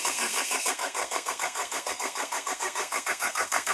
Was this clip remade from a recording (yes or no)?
yes